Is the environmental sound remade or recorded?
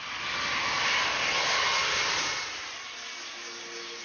recorded